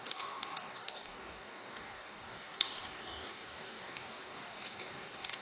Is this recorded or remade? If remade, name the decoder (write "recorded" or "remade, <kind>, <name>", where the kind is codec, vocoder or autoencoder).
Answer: remade, codec, DAC